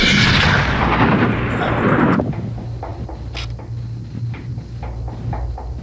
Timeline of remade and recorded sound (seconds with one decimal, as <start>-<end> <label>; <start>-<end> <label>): 0.0-5.8 recorded